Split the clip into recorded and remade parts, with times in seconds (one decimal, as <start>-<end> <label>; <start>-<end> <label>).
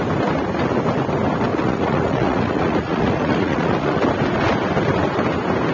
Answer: 0.0-1.5 recorded; 1.5-4.0 remade; 4.0-5.7 recorded